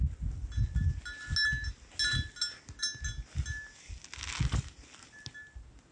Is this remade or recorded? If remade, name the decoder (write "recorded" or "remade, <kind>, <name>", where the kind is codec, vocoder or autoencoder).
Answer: recorded